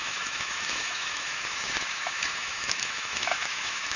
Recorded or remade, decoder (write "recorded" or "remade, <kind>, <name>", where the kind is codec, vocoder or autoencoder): remade, autoencoder, DAC-VAE